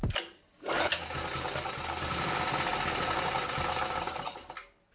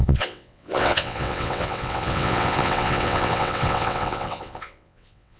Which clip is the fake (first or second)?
second